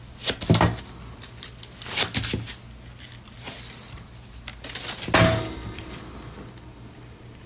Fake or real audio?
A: real